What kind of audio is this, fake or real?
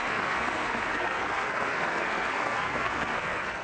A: fake